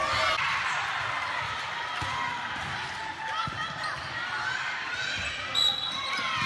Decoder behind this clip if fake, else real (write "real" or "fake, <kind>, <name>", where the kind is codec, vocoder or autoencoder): real